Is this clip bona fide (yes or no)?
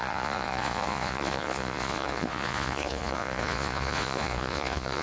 no